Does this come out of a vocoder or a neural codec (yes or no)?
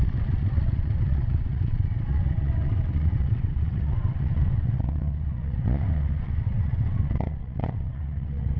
yes